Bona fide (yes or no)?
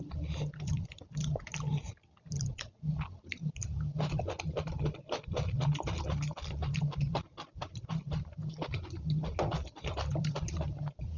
yes